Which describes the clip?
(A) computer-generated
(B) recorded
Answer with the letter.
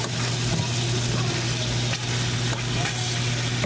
B